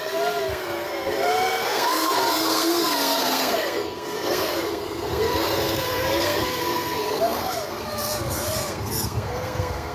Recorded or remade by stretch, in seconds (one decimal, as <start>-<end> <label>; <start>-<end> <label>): 0.0-9.9 remade